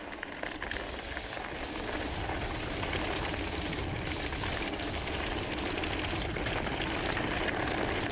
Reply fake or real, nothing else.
fake